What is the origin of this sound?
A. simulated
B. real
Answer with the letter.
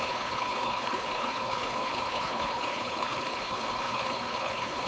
A